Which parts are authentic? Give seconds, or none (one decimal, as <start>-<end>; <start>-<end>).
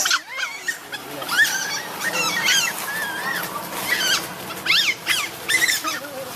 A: 0.0-6.4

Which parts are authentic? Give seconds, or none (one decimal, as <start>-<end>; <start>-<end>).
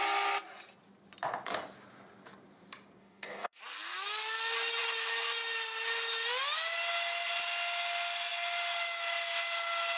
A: 0.0-3.0; 3.6-10.0